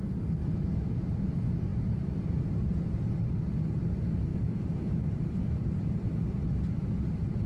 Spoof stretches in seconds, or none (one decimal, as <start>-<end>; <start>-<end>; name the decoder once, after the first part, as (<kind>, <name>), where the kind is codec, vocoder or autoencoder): 0.4-1.1 (autoencoder, DAC-VAE); 4.3-5.1